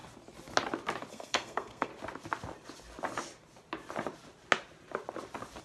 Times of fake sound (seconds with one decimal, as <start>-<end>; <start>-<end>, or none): 1.1-1.9